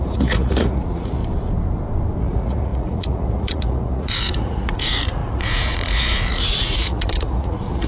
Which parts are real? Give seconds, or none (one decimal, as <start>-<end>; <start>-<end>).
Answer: 1.2-2.2